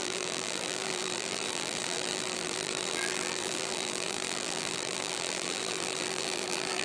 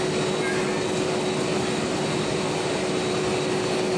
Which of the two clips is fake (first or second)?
first